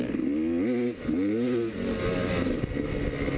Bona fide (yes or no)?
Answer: yes